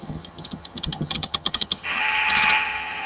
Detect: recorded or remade remade